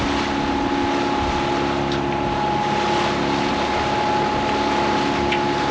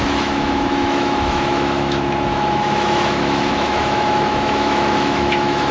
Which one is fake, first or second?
second